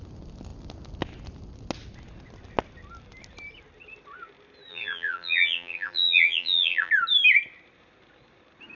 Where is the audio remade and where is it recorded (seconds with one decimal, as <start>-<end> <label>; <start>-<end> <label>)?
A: 0.0-4.7 recorded; 4.7-6.9 remade; 6.9-8.7 recorded